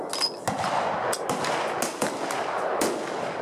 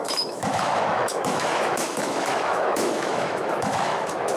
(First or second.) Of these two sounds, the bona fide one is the first